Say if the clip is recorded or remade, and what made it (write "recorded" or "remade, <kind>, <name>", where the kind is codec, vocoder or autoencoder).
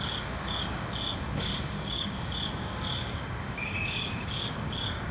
remade, codec, DAC